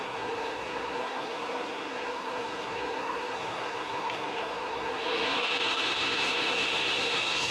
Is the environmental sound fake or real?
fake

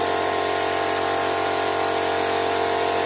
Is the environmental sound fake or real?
real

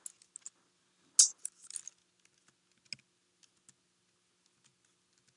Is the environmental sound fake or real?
real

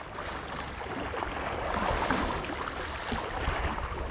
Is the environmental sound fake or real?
real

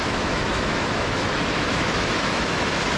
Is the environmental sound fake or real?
fake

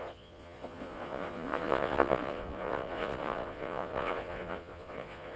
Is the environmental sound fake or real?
fake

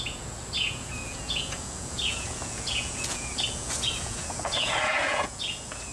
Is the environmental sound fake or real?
fake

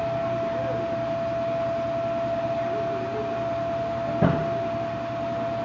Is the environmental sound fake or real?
real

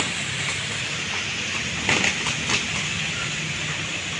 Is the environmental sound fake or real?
real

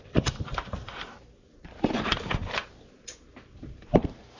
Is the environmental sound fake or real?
fake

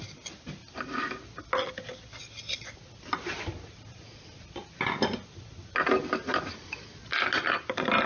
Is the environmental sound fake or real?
real